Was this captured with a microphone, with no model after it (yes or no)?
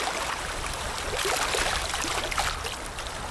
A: yes